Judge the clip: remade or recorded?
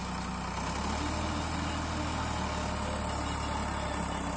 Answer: recorded